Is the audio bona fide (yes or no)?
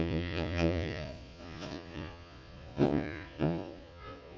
no